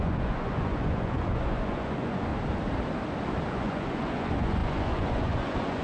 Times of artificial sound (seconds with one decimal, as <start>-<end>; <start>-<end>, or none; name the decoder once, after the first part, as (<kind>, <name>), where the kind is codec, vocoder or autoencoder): 0.0-2.3 (vocoder, Vocos); 3.5-5.8